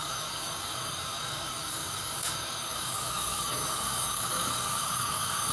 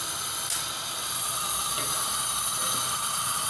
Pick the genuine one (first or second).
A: second